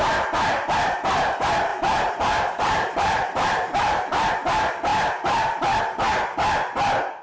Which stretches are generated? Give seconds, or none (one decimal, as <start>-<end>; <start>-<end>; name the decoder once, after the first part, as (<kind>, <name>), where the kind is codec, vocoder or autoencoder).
1.7-4.3 (vocoder, BigVGAN v2)